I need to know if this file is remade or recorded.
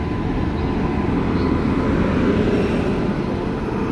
recorded